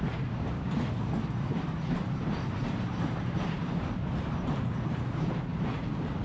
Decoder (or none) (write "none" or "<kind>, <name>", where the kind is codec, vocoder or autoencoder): vocoder, BigVGAN v2